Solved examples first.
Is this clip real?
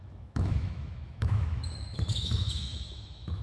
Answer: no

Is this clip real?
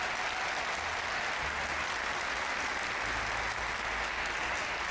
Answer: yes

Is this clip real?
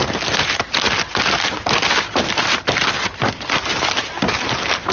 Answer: yes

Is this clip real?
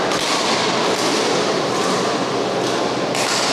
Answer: yes